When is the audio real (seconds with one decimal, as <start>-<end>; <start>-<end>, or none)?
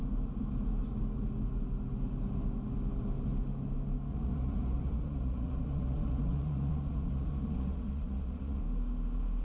0.0-4.1; 8.6-9.4